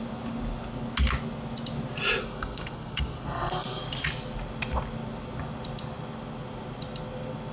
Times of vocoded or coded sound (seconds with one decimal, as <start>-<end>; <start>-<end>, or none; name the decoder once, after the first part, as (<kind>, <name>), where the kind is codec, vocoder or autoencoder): 2.2-3.8 (codec, SNAC)

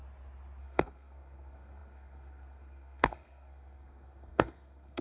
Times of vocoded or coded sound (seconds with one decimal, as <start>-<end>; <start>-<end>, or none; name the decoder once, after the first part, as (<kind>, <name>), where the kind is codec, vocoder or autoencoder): 0.6-5.0 (codec, SNAC)

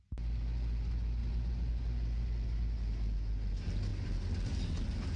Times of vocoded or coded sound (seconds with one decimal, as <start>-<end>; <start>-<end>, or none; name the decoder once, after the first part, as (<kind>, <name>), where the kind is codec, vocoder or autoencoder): none

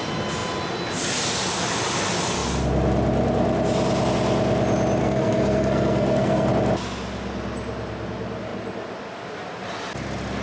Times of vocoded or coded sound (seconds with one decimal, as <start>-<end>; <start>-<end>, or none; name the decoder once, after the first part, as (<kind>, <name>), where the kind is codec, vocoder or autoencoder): 5.0-6.5 (codec, SNAC)

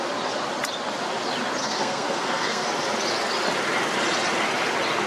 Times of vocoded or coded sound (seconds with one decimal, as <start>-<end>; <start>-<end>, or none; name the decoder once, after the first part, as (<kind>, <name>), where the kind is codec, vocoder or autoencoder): 1.6-2.7 (codec, SNAC)